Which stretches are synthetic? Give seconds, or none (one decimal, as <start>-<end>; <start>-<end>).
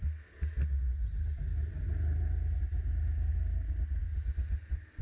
none